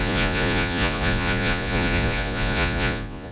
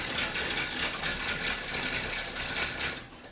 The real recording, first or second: second